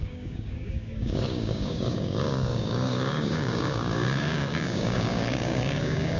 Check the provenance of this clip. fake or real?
fake